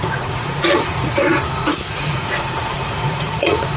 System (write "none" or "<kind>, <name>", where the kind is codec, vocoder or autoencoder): vocoder, Vocos